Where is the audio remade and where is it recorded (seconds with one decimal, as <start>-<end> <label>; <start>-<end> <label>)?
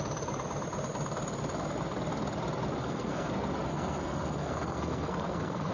0.0-2.8 recorded; 2.8-3.3 remade; 3.3-3.7 recorded; 3.7-5.7 remade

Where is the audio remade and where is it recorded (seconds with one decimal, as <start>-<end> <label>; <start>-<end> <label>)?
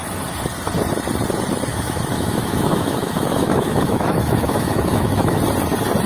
0.0-1.7 recorded; 1.7-5.4 remade; 5.4-6.1 recorded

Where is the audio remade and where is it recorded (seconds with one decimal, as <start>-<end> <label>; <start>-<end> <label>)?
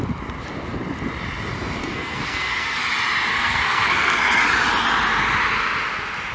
0.0-1.8 recorded; 1.8-2.8 remade; 2.8-3.3 recorded; 3.3-4.4 remade; 4.4-6.3 recorded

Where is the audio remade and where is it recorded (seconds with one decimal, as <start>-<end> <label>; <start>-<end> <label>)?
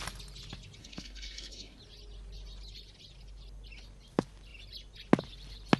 0.0-0.8 recorded; 0.8-1.8 remade; 1.8-5.8 recorded